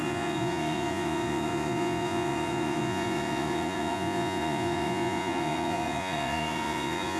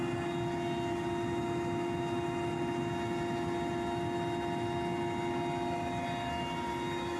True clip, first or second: second